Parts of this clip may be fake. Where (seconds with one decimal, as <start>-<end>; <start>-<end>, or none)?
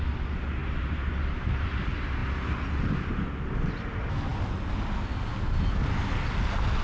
0.6-1.2